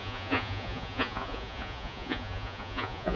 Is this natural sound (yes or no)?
no